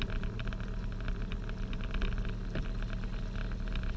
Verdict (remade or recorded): recorded